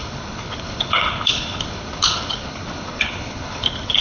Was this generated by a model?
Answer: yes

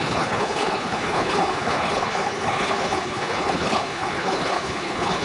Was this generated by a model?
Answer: yes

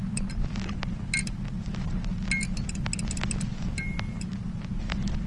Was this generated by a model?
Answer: no